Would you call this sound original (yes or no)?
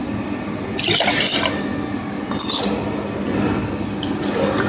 no